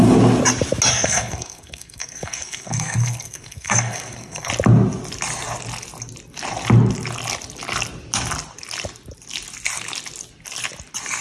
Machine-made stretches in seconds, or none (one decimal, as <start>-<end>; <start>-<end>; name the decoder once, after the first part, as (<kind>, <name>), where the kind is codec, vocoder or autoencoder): 0.9-4.5 (codec, SNAC)